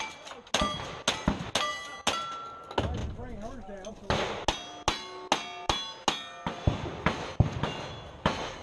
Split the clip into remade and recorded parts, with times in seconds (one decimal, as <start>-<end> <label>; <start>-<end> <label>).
0.0-8.6 recorded